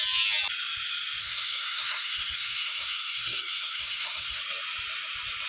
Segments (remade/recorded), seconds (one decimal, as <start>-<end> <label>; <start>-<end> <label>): 0.0-1.2 recorded; 1.2-4.4 remade; 4.4-5.5 recorded

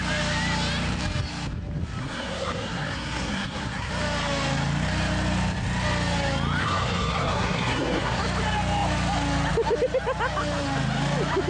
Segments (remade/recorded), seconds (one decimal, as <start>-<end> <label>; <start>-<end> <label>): 0.0-2.0 recorded; 2.0-3.9 remade; 3.9-6.6 recorded; 6.6-8.2 remade; 8.2-11.5 recorded

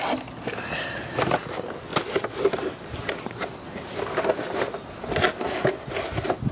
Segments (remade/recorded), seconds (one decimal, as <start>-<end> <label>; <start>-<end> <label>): 0.0-6.5 recorded

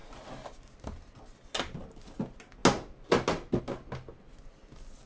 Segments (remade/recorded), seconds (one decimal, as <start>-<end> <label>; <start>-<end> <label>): 0.0-5.1 recorded